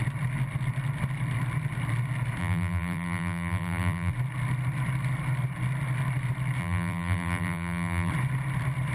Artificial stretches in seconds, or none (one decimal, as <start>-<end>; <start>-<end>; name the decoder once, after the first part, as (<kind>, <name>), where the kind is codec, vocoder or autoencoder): 2.4-4.1 (vocoder, BigVGAN v2); 6.6-8.1